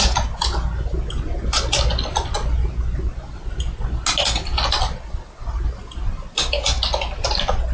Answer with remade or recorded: recorded